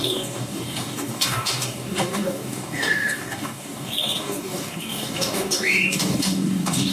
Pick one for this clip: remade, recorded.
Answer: remade